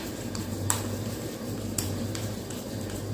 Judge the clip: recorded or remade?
remade